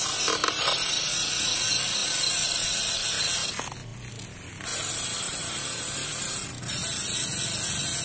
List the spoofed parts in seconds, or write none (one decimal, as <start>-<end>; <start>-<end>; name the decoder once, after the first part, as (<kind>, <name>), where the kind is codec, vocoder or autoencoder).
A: none